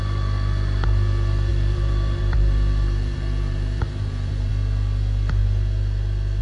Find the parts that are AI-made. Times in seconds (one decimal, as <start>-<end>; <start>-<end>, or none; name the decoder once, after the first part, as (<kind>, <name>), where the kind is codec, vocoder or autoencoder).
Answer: 1.5-4.5 (vocoder, BigVGAN v2)